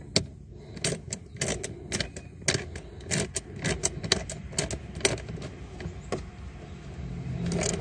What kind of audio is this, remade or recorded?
recorded